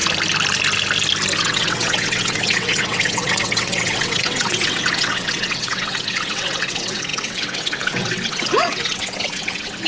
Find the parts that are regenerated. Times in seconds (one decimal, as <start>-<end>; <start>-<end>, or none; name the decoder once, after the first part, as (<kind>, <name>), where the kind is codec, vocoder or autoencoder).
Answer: 1.4-9.9 (vocoder, WaveNeXt)